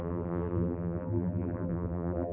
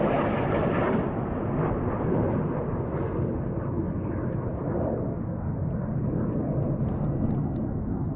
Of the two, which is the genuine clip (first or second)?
second